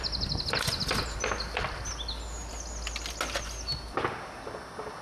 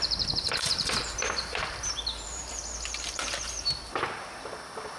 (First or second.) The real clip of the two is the first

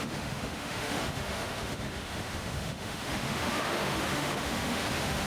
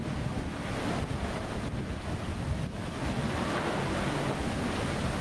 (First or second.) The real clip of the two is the second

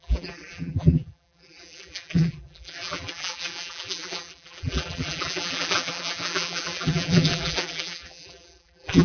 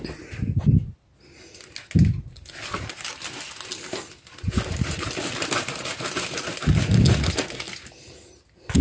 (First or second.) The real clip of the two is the second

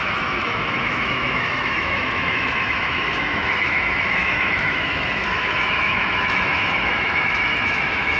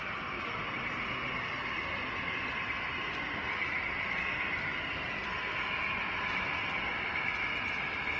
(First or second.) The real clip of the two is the second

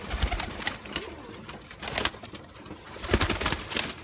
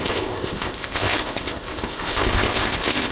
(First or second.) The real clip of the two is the first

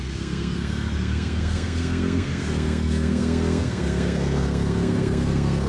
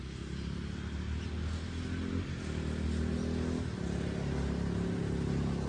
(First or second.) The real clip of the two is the second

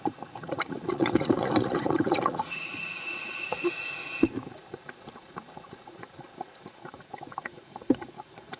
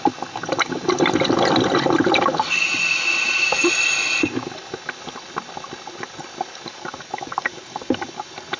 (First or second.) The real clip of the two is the second